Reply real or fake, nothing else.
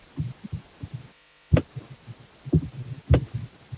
real